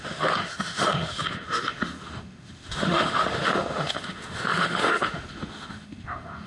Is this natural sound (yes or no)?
no